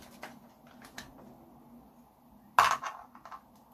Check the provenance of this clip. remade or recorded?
recorded